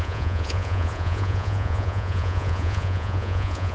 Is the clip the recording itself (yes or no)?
no